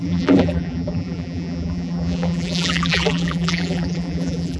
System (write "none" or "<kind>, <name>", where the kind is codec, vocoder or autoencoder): vocoder, BigVGAN v2